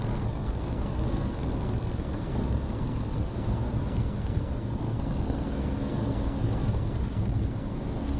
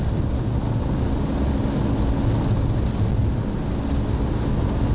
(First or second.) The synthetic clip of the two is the first